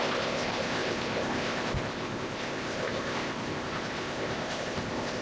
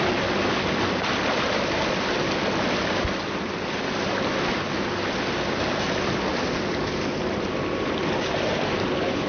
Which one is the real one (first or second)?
second